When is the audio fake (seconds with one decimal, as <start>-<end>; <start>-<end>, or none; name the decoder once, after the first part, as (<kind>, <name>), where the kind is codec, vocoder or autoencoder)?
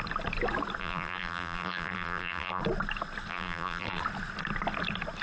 0.8-2.6 (vocoder, BigVGAN v2); 3.3-4.0